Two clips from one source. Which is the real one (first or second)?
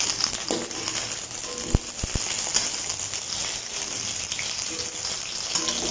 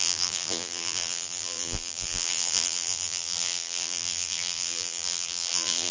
first